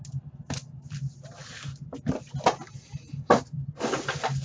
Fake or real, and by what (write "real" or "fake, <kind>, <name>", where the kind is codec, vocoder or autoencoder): real